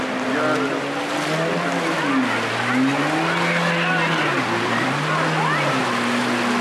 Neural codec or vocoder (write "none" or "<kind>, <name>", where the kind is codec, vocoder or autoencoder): none